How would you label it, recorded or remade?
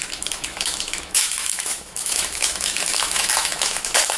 remade